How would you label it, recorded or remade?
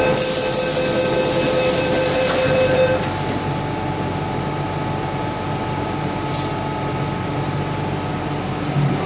recorded